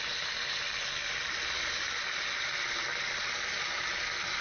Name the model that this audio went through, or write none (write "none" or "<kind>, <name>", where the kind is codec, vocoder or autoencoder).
none